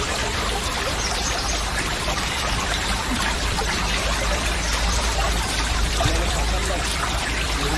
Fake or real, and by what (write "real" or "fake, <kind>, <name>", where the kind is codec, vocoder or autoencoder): fake, vocoder, BigVGAN v2